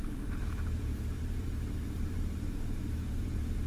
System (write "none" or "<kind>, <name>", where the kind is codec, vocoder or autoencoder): vocoder, BigVGAN v2